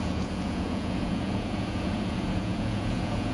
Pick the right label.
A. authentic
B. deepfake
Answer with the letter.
B